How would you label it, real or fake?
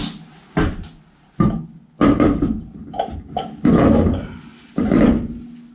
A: real